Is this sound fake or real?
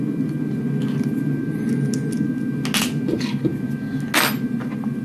real